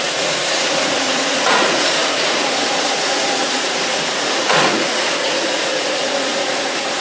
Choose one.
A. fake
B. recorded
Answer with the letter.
A